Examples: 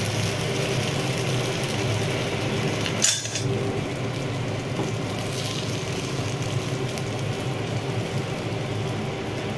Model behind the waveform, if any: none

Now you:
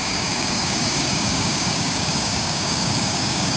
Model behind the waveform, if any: codec, DAC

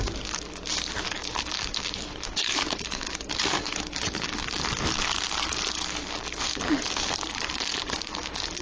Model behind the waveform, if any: codec, DAC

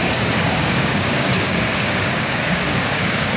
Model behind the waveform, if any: codec, DAC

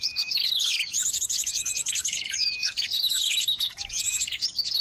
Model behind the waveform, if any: codec, DAC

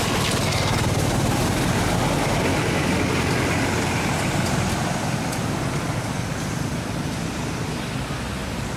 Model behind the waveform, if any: none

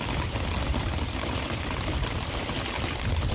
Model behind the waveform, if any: none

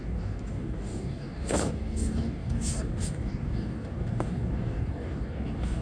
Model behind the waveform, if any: codec, DAC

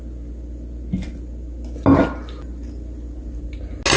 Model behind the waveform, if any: none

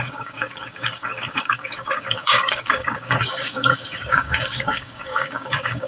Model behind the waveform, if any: codec, DAC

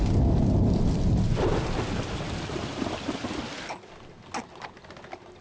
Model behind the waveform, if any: none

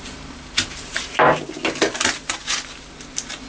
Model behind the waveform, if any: none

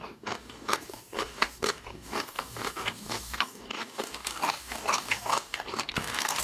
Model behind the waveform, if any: codec, DAC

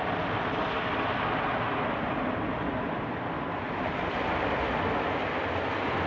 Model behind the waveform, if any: none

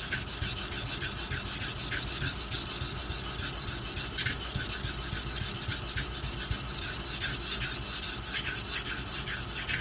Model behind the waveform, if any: none